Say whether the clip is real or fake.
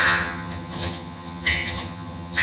fake